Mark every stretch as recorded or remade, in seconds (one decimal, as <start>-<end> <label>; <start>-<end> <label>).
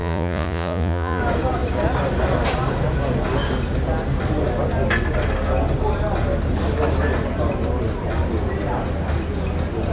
0.0-1.2 remade; 1.2-9.9 recorded